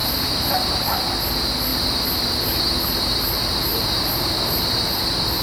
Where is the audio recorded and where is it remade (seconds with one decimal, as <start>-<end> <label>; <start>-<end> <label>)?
0.0-1.0 remade; 1.0-1.7 recorded; 1.7-2.6 remade; 2.6-3.7 recorded; 3.7-4.6 remade; 4.6-5.4 recorded